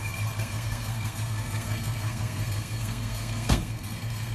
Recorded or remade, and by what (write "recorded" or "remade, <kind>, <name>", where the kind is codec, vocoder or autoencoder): remade, codec, SNAC